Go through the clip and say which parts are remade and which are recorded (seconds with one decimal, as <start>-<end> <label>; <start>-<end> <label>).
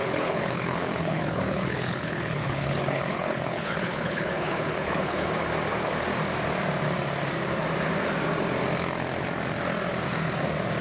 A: 0.0-5.3 remade; 5.3-10.8 recorded